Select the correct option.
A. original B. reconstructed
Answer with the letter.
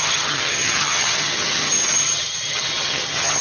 B